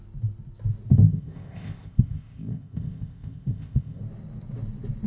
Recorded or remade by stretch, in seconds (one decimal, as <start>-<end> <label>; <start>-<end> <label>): 0.0-0.9 recorded; 0.9-4.0 remade; 4.0-5.1 recorded